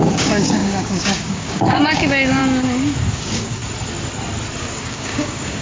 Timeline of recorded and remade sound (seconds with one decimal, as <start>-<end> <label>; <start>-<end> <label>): 0.0-2.4 remade; 2.4-3.1 recorded; 3.1-3.6 remade; 3.6-4.6 recorded; 4.6-5.6 remade